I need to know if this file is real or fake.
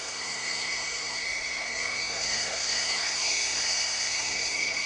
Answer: fake